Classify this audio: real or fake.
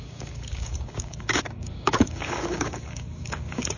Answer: fake